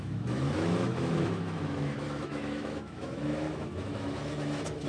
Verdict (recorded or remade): remade